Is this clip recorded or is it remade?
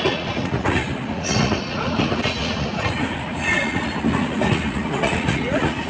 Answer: remade